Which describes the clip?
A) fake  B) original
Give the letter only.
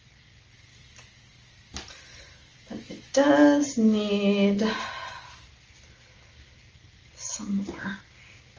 B